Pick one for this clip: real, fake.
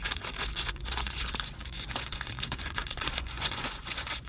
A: fake